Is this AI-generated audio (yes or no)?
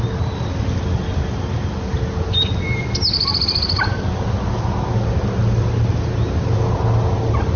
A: no